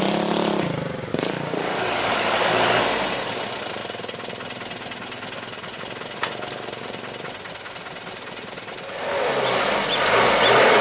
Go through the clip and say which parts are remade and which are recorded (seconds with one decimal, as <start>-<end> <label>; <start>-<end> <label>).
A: 0.0-1.1 recorded; 1.1-2.8 remade; 2.8-10.8 recorded